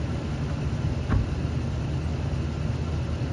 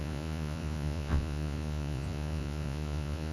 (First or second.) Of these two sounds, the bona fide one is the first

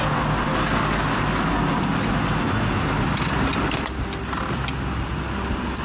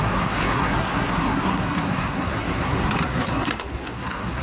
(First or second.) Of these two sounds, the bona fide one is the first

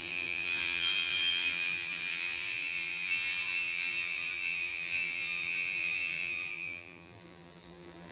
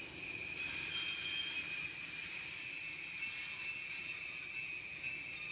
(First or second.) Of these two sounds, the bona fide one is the second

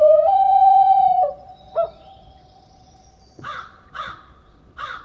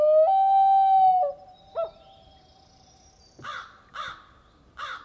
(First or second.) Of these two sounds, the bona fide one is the second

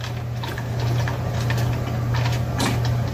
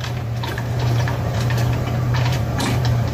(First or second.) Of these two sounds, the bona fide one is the first